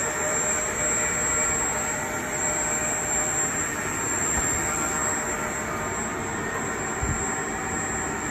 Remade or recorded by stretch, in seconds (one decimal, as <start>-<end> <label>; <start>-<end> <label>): 0.0-8.3 recorded